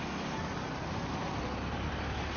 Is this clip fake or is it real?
real